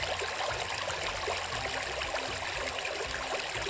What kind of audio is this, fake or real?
real